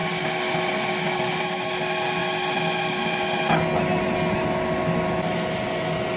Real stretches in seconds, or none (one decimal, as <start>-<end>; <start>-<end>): 0.0-6.2